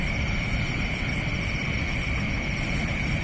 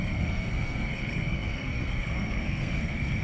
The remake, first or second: second